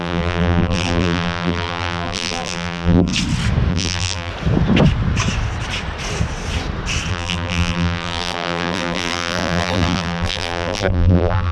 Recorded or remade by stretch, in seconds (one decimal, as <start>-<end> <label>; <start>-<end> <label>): 0.0-3.1 remade; 3.1-3.7 recorded; 3.7-4.3 remade; 4.3-7.1 recorded; 7.1-11.5 remade